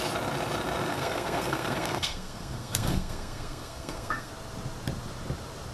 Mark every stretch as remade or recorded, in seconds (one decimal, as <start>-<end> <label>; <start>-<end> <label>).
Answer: 0.0-0.9 recorded; 0.9-4.3 remade; 4.3-5.7 recorded